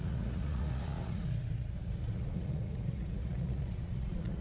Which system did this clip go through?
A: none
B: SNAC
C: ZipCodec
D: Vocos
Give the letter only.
D